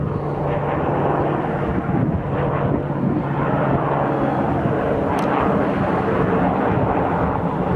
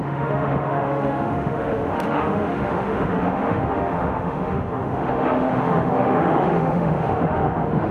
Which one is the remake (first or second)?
second